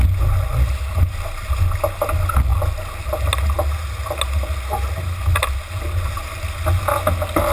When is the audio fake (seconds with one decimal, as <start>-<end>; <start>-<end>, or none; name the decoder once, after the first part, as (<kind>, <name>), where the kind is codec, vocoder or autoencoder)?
none